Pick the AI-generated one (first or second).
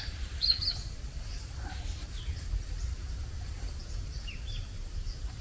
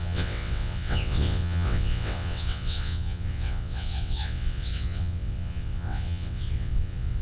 second